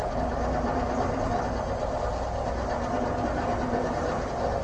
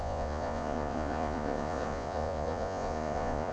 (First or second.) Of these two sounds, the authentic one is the first